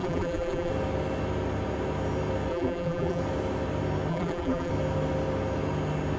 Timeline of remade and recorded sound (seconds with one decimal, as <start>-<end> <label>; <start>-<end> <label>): 0.0-0.7 remade; 0.7-2.5 recorded; 2.5-3.2 remade; 3.2-4.1 recorded; 4.1-4.7 remade; 4.7-6.2 recorded